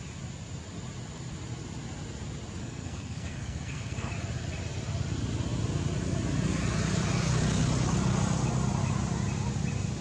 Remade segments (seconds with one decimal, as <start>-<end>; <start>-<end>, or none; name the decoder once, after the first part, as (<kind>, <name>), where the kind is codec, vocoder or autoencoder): 2.6-4.1 (codec, SNAC)